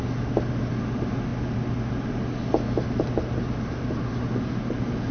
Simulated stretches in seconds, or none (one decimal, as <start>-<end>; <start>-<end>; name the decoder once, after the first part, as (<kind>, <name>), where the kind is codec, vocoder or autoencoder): none